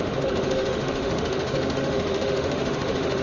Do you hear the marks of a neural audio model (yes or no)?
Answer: yes